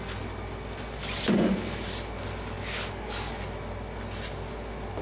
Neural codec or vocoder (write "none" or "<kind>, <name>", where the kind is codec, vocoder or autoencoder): none